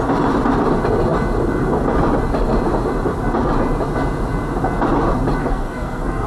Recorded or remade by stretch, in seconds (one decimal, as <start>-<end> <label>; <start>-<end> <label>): 0.0-5.4 recorded; 5.4-6.3 remade